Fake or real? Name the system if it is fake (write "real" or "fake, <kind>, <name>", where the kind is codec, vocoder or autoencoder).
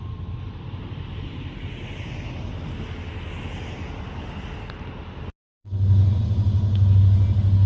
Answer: real